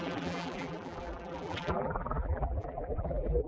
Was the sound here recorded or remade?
remade